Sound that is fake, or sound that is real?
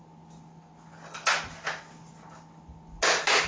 real